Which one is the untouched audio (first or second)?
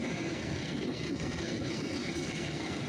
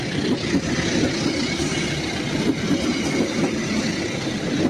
second